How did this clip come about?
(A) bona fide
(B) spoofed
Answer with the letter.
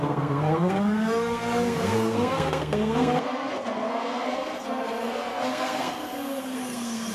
B